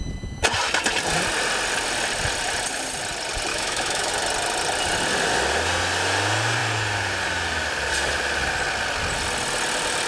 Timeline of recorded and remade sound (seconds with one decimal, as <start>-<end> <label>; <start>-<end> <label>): 0.0-3.5 recorded; 3.5-4.1 remade; 4.1-10.1 recorded